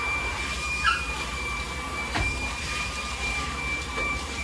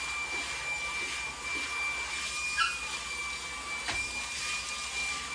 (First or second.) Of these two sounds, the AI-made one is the first